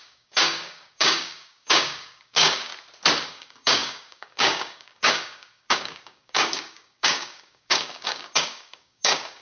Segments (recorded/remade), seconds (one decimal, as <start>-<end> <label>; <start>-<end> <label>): 0.0-2.7 remade; 2.7-3.3 recorded; 3.3-9.4 remade

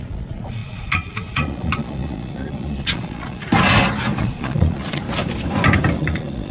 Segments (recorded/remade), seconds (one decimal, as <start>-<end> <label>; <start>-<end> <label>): 0.0-3.5 remade; 3.5-4.2 recorded; 4.2-5.0 remade; 5.0-6.0 recorded; 6.0-6.5 remade